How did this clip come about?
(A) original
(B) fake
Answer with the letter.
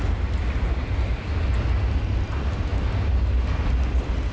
A